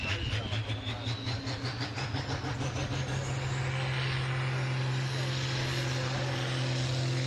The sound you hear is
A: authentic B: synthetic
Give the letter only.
A